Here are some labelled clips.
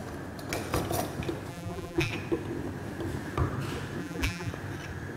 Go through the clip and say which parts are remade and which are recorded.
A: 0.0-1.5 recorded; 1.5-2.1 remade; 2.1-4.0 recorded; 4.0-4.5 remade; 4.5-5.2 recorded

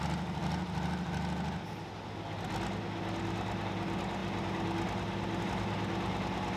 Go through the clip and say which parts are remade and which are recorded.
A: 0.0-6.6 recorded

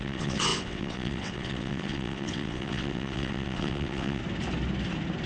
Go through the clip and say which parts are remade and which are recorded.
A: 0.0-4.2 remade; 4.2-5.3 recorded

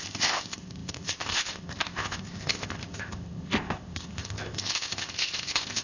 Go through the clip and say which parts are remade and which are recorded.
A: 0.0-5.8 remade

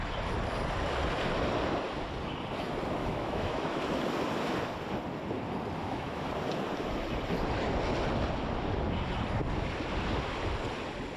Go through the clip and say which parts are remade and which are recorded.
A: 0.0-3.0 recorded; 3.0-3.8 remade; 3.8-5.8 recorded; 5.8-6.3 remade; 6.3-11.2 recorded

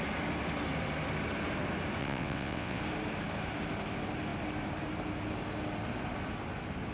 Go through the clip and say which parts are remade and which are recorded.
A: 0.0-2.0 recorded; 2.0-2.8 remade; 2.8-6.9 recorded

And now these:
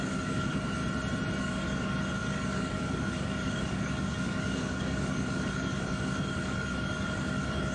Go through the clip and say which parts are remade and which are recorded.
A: 0.0-0.8 remade; 0.8-1.4 recorded; 1.4-7.7 remade

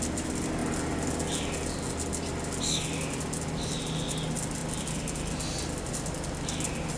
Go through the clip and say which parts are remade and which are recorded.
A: 0.0-7.0 recorded